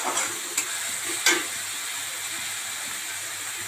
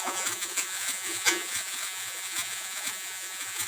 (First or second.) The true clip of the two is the first